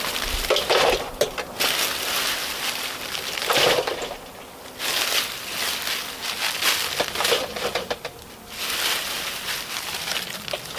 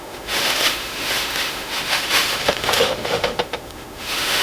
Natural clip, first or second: first